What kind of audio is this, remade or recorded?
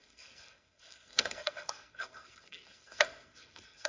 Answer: remade